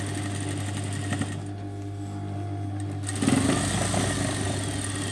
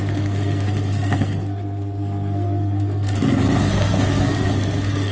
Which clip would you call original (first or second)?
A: first